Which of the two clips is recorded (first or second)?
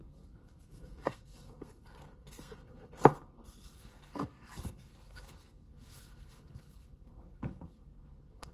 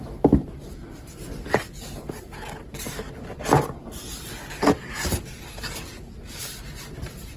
second